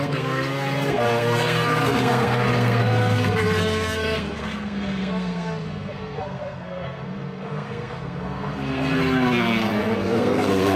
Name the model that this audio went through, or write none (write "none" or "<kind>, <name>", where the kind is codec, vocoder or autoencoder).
codec, SNAC